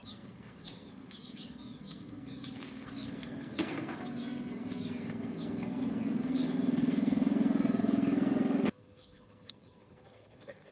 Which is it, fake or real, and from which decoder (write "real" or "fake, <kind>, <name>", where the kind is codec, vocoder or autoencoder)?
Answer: fake, codec, SNAC